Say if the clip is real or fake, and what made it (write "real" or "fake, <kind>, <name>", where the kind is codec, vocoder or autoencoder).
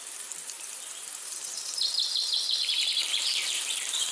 fake, vocoder, BigVGAN v2